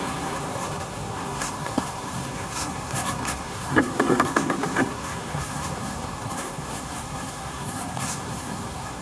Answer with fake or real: fake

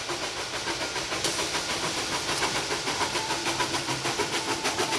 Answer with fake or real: real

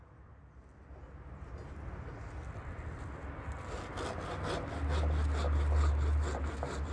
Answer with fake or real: real